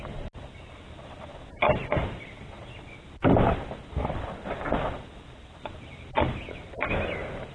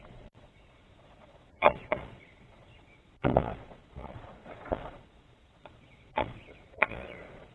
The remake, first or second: second